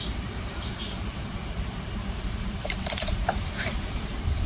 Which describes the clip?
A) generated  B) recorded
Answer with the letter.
A